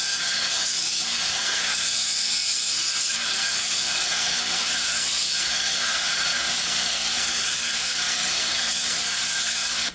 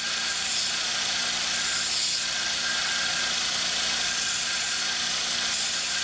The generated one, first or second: first